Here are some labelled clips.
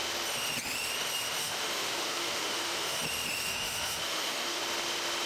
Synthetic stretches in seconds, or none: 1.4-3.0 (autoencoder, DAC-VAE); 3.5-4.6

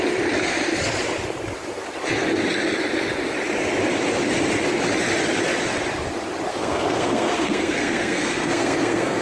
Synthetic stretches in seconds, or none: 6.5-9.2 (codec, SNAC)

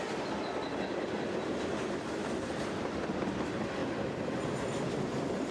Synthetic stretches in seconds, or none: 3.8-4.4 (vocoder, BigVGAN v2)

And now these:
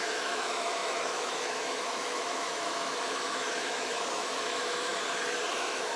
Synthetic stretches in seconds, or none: 0.0-4.9 (autoencoder, DAC-VAE); 5.5-6.0

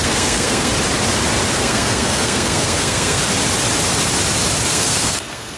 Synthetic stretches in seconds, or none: 0.0-0.7 (codec, SNAC); 1.5-3.2; 4.7-5.6

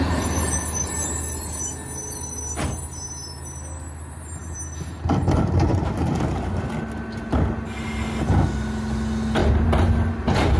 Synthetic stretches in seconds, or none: none